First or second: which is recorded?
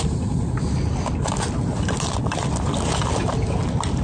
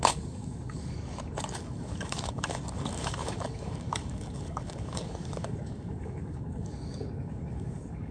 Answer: first